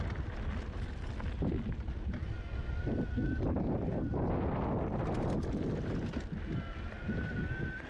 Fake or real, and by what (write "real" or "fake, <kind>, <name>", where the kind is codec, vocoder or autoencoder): real